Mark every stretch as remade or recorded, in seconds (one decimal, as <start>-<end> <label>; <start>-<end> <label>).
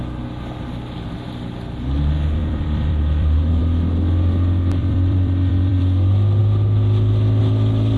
0.0-2.4 recorded; 2.4-3.6 remade; 3.6-4.8 recorded; 4.8-5.8 remade; 5.8-8.0 recorded